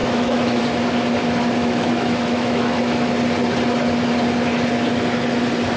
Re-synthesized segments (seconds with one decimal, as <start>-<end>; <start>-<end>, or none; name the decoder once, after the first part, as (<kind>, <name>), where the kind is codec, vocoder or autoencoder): 0.0-0.6 (autoencoder, DAC-VAE); 1.6-3.1